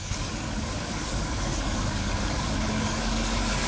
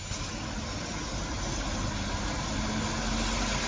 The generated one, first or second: first